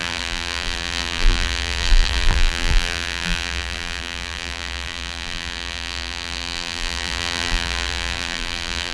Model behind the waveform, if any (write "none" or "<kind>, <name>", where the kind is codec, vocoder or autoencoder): vocoder, BigVGAN v2